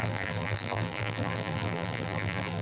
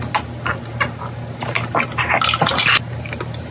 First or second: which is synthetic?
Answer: first